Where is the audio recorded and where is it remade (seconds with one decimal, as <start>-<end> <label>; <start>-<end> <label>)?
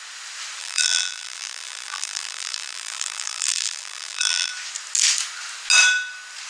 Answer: 0.0-0.6 recorded; 0.6-4.5 remade; 4.5-6.5 recorded